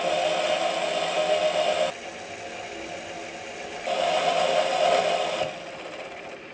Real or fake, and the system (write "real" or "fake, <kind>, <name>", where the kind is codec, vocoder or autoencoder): real